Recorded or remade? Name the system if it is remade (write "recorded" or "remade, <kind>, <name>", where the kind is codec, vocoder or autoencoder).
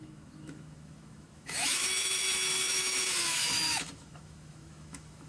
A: remade, autoencoder, DAC-VAE